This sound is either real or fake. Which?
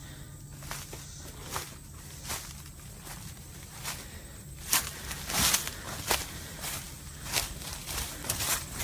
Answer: real